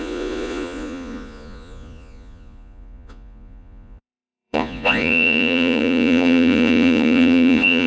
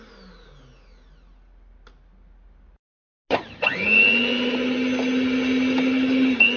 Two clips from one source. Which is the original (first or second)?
second